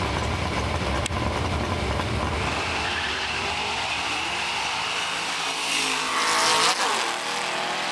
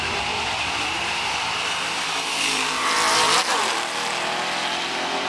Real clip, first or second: first